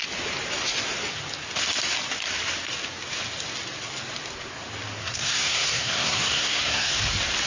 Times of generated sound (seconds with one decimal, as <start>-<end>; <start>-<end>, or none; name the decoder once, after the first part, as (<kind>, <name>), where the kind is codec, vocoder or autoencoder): 5.0-7.0 (codec, SNAC)